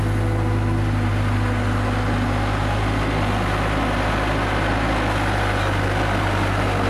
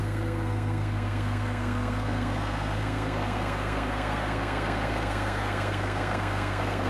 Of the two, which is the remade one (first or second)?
second